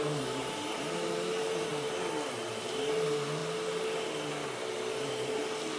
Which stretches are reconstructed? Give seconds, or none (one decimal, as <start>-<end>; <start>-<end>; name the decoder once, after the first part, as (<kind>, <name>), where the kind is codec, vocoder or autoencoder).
none